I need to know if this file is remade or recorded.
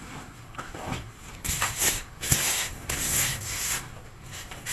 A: remade